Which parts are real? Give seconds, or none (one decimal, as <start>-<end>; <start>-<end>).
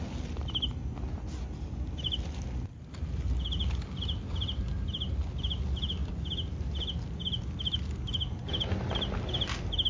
0.0-9.9